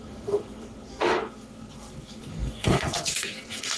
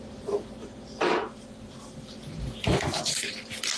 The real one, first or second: second